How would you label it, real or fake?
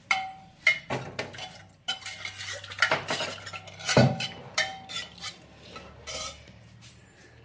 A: fake